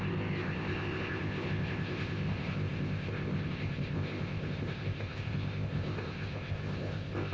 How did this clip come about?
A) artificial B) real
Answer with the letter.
A